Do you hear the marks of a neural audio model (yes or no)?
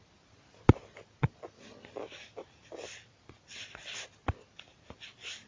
no